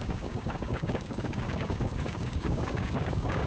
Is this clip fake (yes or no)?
yes